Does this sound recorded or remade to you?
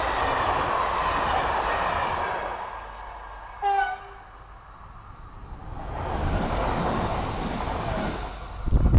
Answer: recorded